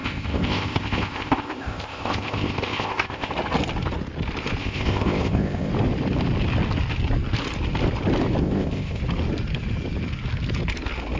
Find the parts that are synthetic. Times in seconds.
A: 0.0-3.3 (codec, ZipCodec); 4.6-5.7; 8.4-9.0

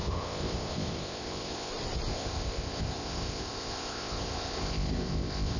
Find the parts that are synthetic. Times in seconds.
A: 0.0-1.7 (codec, ZipCodec); 2.1-5.6

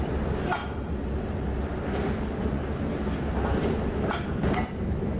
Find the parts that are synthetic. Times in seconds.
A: none

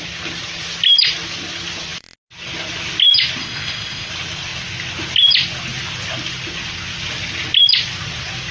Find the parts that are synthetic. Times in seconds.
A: 3.4-4.1 (codec, ZipCodec)

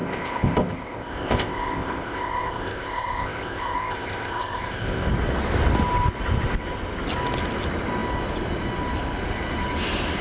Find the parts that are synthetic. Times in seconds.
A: 0.0-5.1 (codec, ZipCodec)